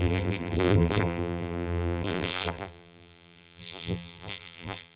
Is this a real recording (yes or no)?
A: no